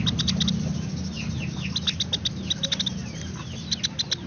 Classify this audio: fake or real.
real